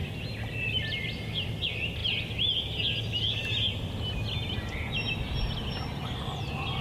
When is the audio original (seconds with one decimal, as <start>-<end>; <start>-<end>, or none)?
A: 0.0-6.8